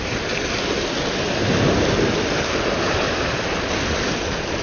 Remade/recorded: recorded